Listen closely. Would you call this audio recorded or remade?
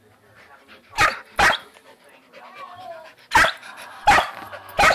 recorded